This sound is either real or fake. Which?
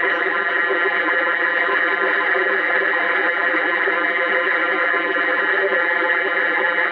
fake